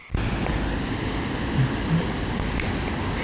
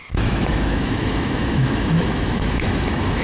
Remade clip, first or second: second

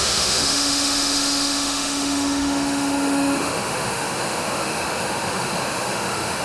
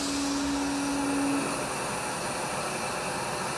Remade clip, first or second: first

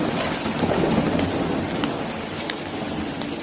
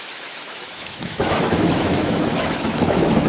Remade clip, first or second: second